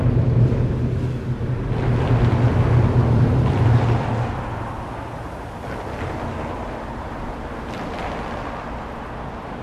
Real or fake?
real